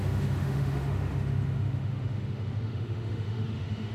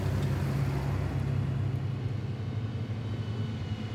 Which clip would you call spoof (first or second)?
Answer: first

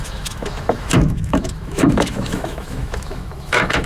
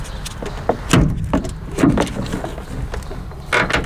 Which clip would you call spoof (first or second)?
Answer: first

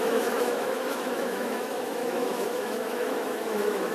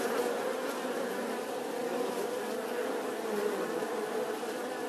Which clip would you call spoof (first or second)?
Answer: first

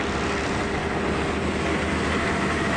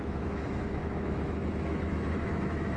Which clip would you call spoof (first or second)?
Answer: second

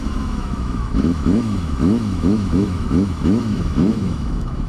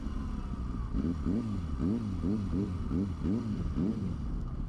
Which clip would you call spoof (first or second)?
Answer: first